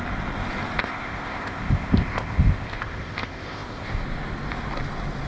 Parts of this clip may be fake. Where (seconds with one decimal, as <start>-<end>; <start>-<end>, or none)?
0.8-4.0